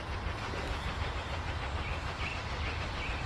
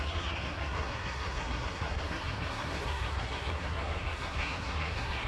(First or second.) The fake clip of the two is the second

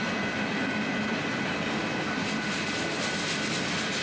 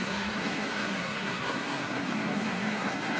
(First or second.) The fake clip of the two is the second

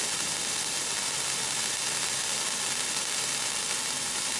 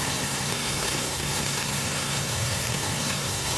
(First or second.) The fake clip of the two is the second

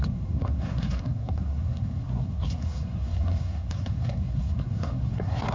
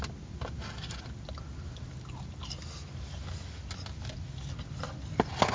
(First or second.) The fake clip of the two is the first